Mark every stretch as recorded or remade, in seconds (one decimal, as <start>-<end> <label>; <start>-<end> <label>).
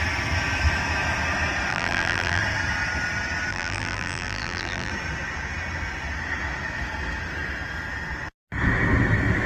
0.0-1.7 recorded; 1.7-2.4 remade; 2.4-3.5 recorded; 3.5-4.9 remade; 4.9-9.5 recorded